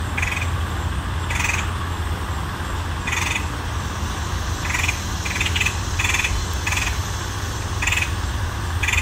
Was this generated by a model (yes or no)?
no